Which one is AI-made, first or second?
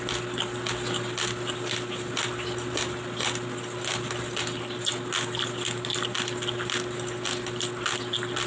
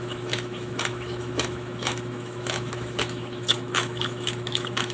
second